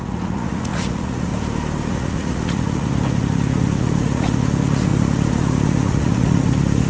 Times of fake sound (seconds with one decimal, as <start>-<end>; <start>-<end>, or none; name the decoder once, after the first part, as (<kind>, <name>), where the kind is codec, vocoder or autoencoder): 0.0-1.3 (vocoder, Vocos); 1.9-6.9